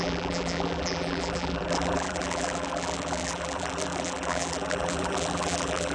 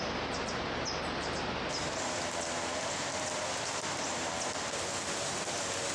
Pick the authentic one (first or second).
second